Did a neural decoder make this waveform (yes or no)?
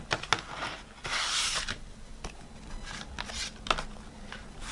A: no